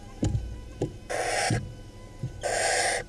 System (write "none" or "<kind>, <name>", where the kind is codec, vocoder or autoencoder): none